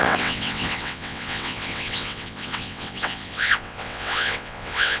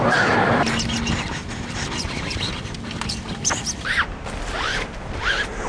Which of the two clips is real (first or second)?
second